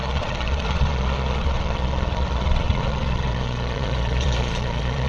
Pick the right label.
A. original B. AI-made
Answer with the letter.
B